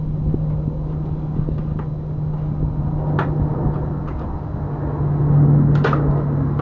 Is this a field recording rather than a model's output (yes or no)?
yes